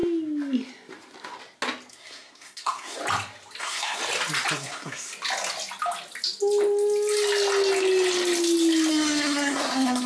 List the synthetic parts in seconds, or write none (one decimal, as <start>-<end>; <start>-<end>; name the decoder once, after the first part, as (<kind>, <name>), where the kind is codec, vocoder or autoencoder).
1.9-3.0 (codec, SNAC); 3.6-4.0; 4.5-5.1; 8.9-10.1